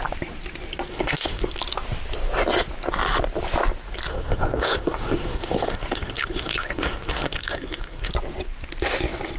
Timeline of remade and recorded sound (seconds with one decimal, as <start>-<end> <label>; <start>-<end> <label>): 0.0-0.9 recorded; 0.9-1.5 remade; 1.5-4.1 recorded; 4.1-8.1 remade; 8.1-9.4 recorded